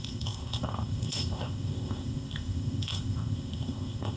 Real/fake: fake